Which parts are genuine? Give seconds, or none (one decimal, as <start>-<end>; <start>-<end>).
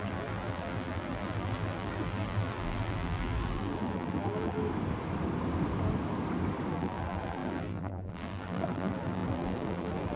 4.6-6.7